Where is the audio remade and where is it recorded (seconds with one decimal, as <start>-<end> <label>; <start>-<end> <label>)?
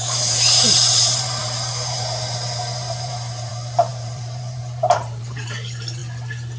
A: 0.0-6.0 remade; 6.0-6.6 recorded